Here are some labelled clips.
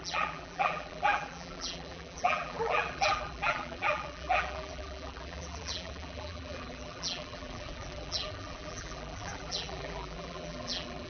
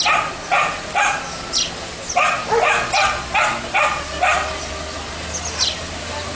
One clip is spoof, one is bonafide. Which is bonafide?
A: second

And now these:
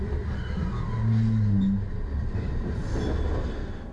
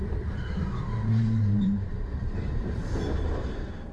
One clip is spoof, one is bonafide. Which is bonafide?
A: first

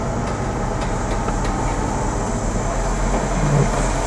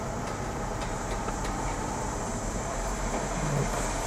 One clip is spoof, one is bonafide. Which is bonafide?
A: first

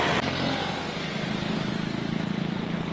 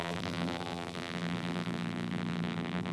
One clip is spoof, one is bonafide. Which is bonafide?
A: first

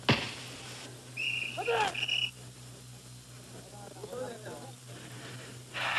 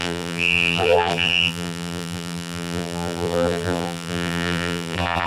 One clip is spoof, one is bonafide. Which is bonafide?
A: first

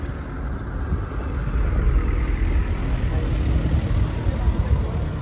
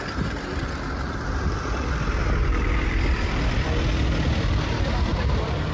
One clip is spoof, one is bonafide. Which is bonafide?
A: first